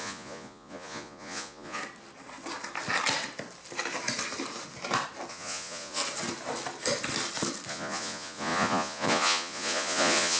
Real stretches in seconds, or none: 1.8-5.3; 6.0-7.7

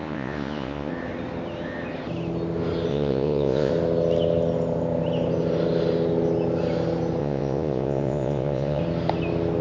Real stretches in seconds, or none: 0.9-2.9; 3.7-7.2; 8.8-9.6